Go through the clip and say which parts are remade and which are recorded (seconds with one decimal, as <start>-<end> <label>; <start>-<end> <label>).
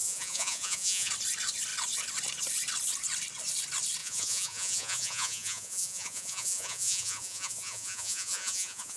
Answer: 0.0-1.1 remade; 1.1-4.0 recorded; 4.0-9.0 remade